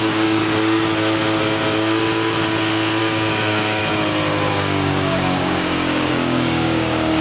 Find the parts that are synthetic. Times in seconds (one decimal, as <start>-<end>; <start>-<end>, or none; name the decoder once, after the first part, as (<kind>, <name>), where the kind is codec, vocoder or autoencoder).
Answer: 0.0-0.4 (codec, DAC); 3.0-3.8; 4.5-7.2